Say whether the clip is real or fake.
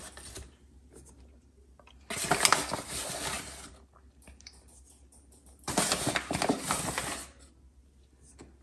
real